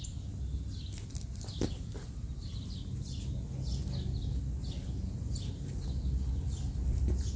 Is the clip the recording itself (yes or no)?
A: yes